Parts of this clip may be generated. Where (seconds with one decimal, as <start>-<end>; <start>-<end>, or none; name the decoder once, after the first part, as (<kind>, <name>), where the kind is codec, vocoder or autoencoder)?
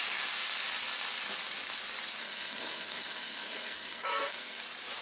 2.2-4.6 (codec, SNAC)